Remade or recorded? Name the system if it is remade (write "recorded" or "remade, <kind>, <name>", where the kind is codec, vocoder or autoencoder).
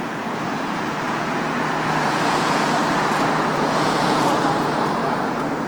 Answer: remade, vocoder, Vocos